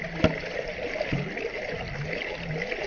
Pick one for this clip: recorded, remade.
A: recorded